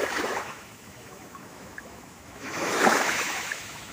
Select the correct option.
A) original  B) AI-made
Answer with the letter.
B